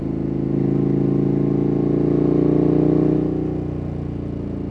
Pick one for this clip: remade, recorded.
recorded